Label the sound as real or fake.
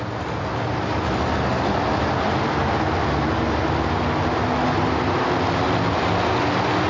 real